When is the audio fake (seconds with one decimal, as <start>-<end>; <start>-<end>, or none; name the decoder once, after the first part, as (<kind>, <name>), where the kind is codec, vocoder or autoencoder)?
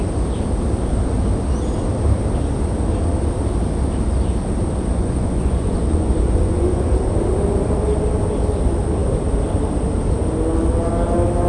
4.9-6.9 (vocoder, Vocos)